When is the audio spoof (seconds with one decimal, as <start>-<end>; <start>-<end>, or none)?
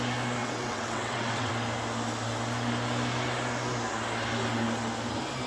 0.4-1.5